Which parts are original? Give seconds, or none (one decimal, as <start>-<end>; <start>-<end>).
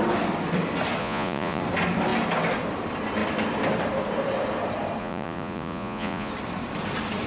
0.0-1.0; 1.6-5.0; 6.3-7.3